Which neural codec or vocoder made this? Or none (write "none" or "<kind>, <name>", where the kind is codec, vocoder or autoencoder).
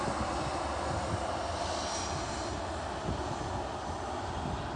none